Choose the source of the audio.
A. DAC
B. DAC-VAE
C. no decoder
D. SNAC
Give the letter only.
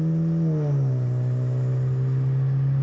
C